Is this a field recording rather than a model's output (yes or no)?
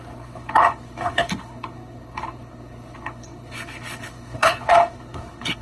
no